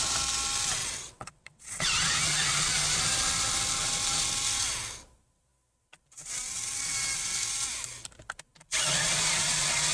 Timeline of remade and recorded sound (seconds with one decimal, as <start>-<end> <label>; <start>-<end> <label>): 0.0-0.8 recorded; 0.8-2.2 remade; 2.2-9.9 recorded

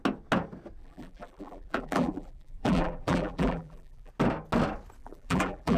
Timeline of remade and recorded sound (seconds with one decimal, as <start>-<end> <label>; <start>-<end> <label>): 0.0-0.8 recorded; 0.8-4.1 remade; 4.1-5.0 recorded; 5.0-5.8 remade

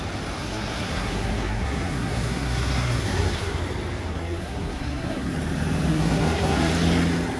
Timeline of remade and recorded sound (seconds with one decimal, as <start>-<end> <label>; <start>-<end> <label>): 0.0-0.4 recorded; 0.4-3.6 remade; 3.6-4.1 recorded; 4.1-5.3 remade; 5.3-5.9 recorded; 5.9-6.7 remade; 6.7-7.4 recorded

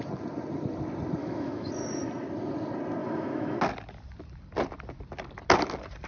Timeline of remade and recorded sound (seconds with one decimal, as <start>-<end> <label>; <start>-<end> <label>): 0.0-1.2 recorded; 1.2-1.7 remade; 1.7-3.0 recorded; 3.0-3.6 remade; 3.6-6.1 recorded

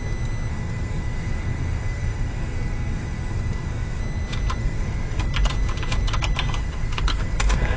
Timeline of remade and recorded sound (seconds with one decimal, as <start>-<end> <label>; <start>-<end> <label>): 0.0-0.5 recorded; 0.5-4.0 remade; 4.0-4.6 recorded; 4.6-5.3 remade; 5.3-6.6 recorded; 6.6-7.8 remade

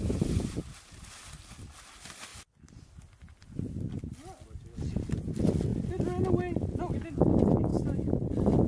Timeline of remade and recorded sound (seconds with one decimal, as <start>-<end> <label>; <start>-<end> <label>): 0.0-0.6 remade; 0.6-8.7 recorded

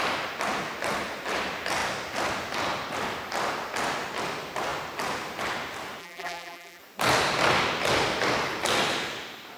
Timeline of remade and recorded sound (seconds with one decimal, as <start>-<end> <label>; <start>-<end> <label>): 0.0-6.0 recorded; 6.0-6.8 remade; 6.8-9.6 recorded